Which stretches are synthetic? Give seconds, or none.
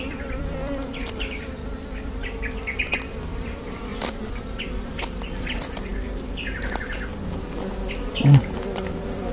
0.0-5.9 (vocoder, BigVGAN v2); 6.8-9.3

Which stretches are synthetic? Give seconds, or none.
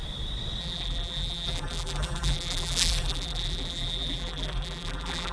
0.6-5.3 (vocoder, BigVGAN v2)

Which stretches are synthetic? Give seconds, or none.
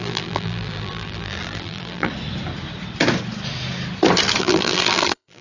0.0-2.1 (vocoder, BigVGAN v2); 4.4-5.4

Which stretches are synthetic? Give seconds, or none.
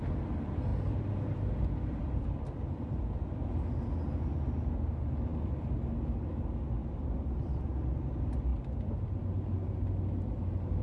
0.7-3.5 (vocoder, BigVGAN v2); 6.8-7.6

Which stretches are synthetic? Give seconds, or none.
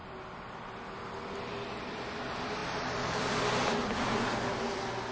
2.6-3.2 (vocoder, BigVGAN v2)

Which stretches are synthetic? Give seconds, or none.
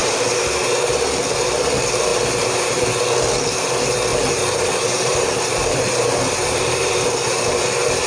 0.0-0.5 (vocoder, BigVGAN v2); 2.1-2.9; 4.1-7.6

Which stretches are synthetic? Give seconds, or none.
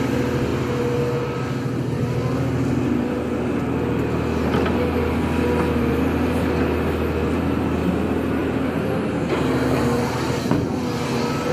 8.4-9.3 (vocoder, BigVGAN v2)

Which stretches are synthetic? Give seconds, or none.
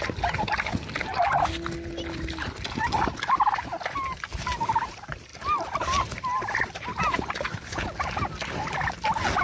none